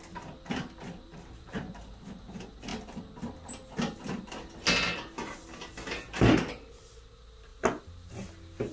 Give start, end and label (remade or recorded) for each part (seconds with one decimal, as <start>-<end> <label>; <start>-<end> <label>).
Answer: 0.0-1.1 recorded; 1.1-1.9 remade; 1.9-8.7 recorded